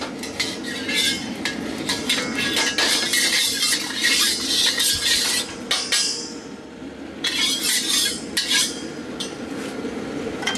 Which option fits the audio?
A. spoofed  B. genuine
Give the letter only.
B